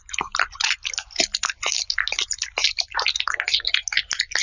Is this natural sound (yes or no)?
yes